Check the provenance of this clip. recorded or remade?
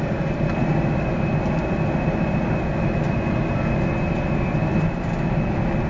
recorded